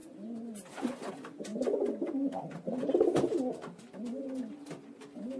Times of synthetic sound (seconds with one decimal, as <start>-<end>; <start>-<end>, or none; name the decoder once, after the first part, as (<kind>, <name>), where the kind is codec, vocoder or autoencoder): none